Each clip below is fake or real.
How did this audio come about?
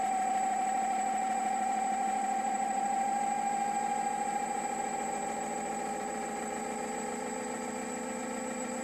fake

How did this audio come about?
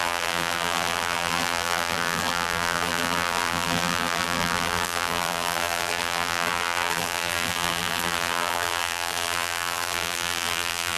fake